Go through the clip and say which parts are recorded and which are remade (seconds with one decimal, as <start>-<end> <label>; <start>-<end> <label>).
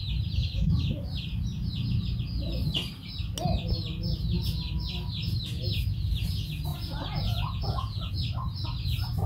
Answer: 0.0-6.7 recorded; 6.7-8.1 remade; 8.1-9.3 recorded